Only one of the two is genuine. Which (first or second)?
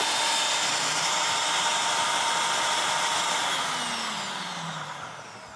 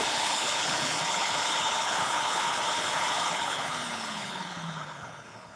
first